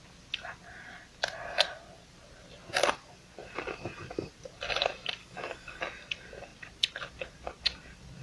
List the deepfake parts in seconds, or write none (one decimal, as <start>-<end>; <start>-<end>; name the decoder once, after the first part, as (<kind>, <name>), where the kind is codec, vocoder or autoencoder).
5.2-5.8 (codec, DAC)